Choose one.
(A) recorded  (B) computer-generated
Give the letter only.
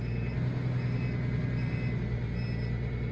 A